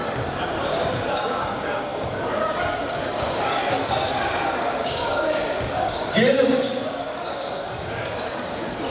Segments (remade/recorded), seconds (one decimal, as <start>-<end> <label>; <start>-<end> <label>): 0.0-1.1 recorded; 1.1-3.6 remade; 3.6-4.7 recorded; 4.7-8.9 remade